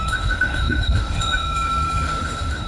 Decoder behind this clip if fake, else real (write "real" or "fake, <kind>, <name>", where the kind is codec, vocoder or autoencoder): fake, autoencoder, DAC-VAE